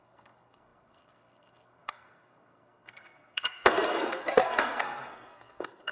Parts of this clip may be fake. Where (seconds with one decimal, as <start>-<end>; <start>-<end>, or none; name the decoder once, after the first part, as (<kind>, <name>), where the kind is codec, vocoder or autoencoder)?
0.0-5.9 (codec, SNAC)